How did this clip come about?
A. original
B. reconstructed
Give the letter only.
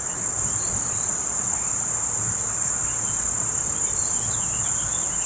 A